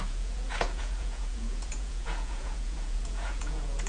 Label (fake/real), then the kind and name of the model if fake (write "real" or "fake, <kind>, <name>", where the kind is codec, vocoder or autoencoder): fake, vocoder, Vocos